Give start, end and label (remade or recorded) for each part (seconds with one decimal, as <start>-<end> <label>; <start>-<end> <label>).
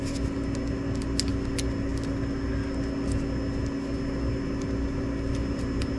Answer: 0.0-5.4 recorded; 5.4-6.0 remade